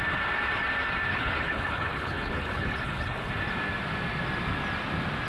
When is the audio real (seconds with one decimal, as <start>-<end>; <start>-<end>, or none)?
0.0-1.1; 3.3-5.3